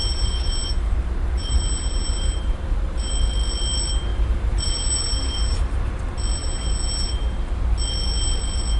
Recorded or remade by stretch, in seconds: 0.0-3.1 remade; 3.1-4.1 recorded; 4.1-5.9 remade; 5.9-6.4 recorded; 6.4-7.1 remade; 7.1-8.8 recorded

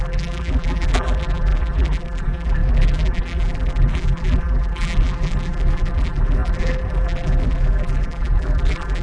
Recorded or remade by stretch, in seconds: 0.0-9.0 remade

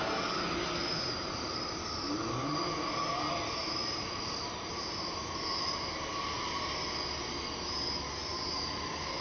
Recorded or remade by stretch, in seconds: 0.0-0.8 recorded; 0.8-2.7 remade; 2.7-3.6 recorded; 3.6-6.8 remade; 6.8-8.2 recorded; 8.2-9.2 remade

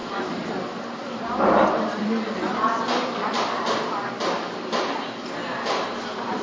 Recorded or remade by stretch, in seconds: 0.0-1.0 recorded; 1.0-4.8 remade; 4.8-6.4 recorded

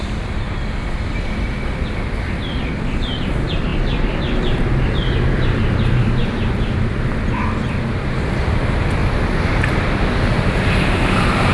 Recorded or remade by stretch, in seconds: 0.0-9.0 remade; 9.0-10.3 recorded; 10.3-11.5 remade

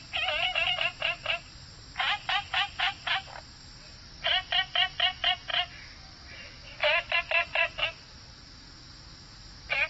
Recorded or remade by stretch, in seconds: 0.0-9.9 recorded

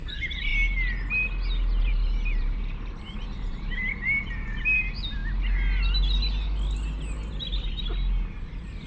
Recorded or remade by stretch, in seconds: 0.0-0.5 remade; 0.5-1.8 recorded; 1.8-5.2 remade; 5.2-8.9 recorded